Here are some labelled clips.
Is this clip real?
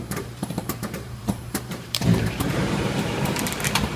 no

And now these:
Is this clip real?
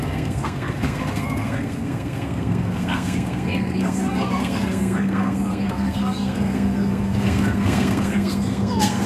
no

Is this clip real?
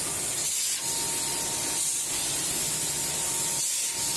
yes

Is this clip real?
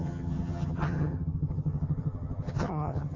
no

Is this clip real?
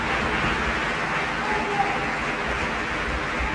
yes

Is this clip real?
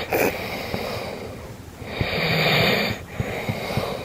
yes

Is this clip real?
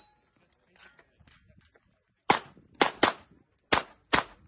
yes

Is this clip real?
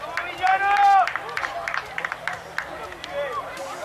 yes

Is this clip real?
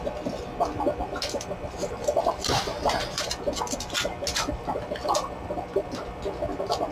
yes